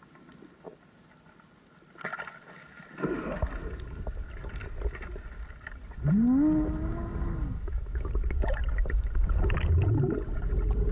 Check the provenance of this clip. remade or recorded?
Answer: recorded